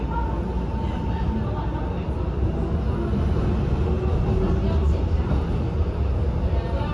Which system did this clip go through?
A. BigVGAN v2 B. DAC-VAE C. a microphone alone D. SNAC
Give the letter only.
C